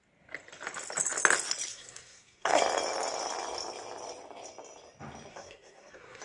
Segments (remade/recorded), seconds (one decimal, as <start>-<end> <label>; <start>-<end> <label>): 0.0-1.7 recorded; 1.7-2.6 remade; 2.6-5.3 recorded; 5.3-6.2 remade